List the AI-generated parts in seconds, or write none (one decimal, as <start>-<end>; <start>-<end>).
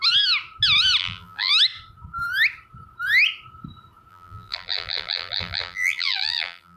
1.0-1.5; 4.1-6.8